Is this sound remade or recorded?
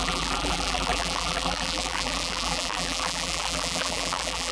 remade